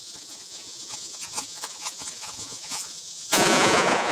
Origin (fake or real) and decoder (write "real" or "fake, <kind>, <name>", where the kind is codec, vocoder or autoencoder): fake, vocoder, Vocos